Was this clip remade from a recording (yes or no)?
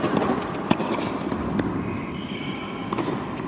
no